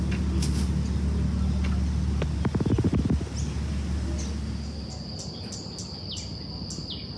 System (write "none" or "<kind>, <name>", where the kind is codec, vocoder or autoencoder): none